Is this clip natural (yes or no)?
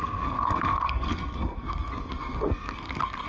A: no